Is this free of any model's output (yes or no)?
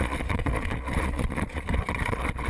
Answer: no